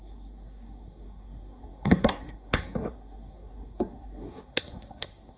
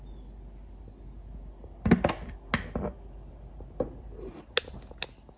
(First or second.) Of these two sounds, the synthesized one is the first